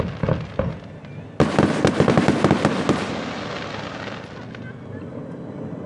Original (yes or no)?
yes